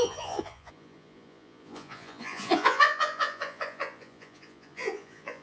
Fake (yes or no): yes